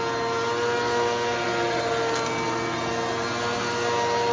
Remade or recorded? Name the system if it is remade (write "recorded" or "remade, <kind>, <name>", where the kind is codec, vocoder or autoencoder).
recorded